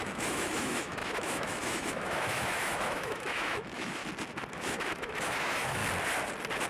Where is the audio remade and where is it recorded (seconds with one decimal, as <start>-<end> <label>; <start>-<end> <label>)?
0.0-4.0 remade; 4.0-4.5 recorded; 4.5-5.8 remade; 5.8-6.7 recorded